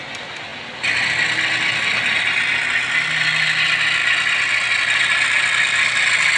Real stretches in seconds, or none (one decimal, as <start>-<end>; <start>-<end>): 0.0-6.4